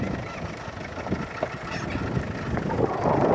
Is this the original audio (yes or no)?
yes